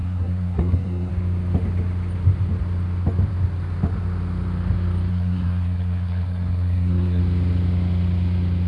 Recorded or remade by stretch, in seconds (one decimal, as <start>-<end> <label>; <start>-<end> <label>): 0.0-1.1 remade; 1.1-5.1 recorded; 5.1-7.2 remade; 7.2-8.7 recorded